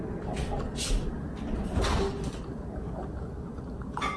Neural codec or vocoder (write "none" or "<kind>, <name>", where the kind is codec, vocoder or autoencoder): none